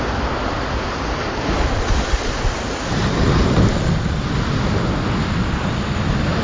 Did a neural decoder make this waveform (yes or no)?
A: no